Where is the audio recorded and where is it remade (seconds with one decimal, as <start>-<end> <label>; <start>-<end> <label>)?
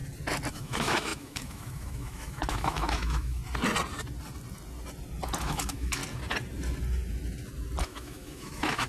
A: 0.0-0.5 recorded; 0.5-3.4 remade; 3.4-5.4 recorded; 5.4-6.0 remade; 6.0-7.8 recorded; 7.8-8.9 remade